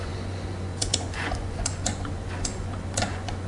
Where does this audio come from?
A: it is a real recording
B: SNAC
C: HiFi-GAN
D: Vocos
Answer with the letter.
D